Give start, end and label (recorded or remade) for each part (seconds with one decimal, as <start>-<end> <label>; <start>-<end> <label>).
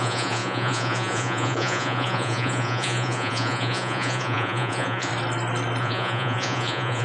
0.0-5.1 remade; 5.1-5.8 recorded; 5.8-7.0 remade